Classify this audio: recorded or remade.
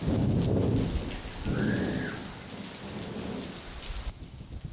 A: recorded